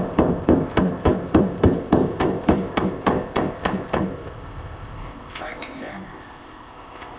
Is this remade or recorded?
remade